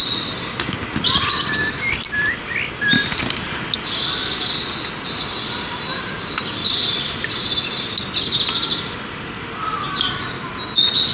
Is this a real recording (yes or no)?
yes